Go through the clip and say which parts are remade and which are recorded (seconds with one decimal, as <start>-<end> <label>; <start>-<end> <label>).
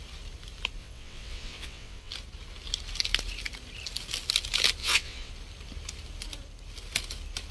0.0-0.8 recorded; 0.8-2.1 remade; 2.1-4.8 recorded; 4.8-5.3 remade; 5.3-7.5 recorded